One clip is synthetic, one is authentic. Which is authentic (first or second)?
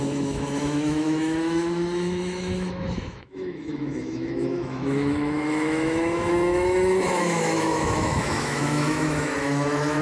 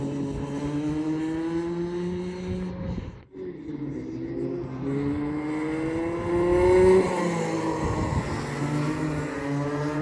second